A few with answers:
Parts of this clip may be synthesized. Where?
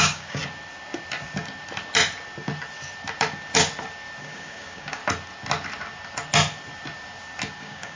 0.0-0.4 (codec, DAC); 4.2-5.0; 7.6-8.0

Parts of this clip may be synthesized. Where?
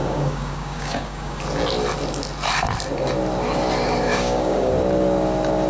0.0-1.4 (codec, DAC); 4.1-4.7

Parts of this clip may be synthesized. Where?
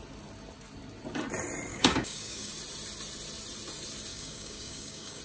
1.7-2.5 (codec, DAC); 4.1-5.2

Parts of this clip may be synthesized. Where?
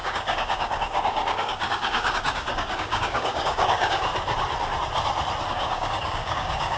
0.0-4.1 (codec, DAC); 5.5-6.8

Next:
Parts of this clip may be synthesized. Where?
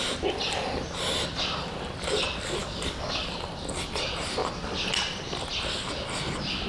2.6-3.3 (codec, DAC)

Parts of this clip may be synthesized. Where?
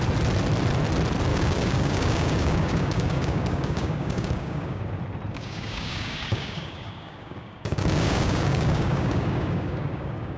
1.3-4.8 (codec, DAC); 5.3-10.4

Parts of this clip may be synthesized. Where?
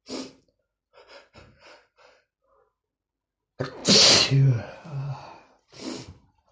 none